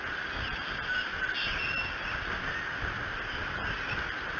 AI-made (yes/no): no